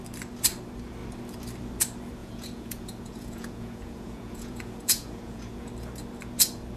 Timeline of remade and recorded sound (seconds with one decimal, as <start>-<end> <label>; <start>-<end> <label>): 0.0-2.2 recorded; 2.2-5.7 remade; 5.7-6.8 recorded